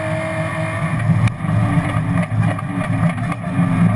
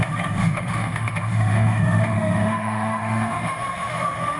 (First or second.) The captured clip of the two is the first